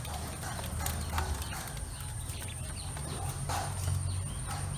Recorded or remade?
recorded